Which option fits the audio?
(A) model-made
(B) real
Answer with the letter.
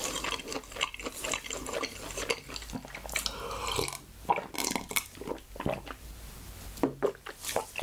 B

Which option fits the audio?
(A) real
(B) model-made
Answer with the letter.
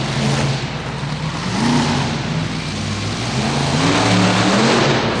A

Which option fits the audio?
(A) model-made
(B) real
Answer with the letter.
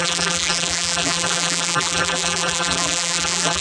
A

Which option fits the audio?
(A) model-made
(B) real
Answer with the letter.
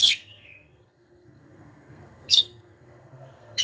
A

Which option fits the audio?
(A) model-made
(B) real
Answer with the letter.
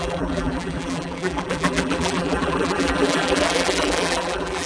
A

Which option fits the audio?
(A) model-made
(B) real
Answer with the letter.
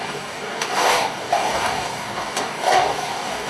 A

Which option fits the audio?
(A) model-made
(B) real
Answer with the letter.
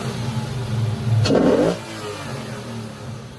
B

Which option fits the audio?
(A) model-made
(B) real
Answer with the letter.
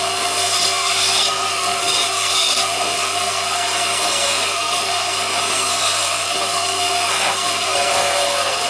A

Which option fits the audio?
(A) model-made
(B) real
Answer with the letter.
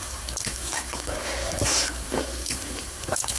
A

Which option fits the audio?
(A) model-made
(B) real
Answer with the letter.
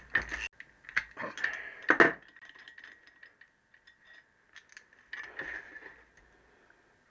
B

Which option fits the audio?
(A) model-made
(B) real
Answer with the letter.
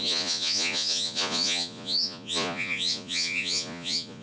A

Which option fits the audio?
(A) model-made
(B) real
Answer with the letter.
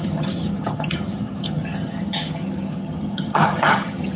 A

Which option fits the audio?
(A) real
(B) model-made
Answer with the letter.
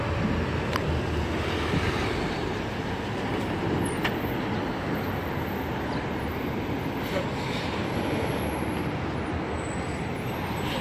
A